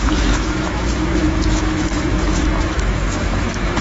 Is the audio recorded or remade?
remade